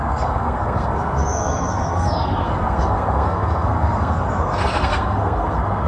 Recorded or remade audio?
remade